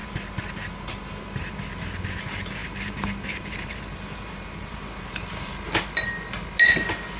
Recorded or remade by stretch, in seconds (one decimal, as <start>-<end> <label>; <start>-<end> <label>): 0.0-1.6 remade; 1.6-2.6 recorded; 2.6-5.5 remade; 5.5-7.2 recorded